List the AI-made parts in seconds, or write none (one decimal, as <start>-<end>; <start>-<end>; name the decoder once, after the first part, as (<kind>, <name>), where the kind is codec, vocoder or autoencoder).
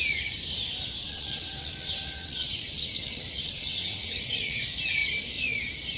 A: 1.0-4.6 (vocoder, WaveNeXt)